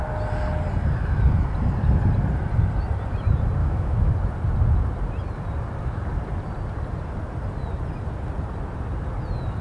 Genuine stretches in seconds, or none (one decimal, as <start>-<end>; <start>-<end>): 0.0-3.6; 4.1-9.6